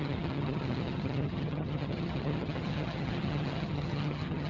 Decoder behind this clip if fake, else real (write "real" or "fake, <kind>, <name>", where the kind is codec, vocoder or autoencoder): fake, vocoder, HiFi-GAN